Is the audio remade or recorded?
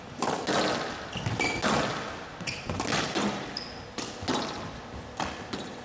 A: recorded